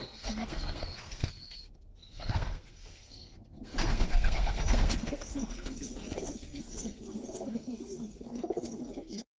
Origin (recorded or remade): remade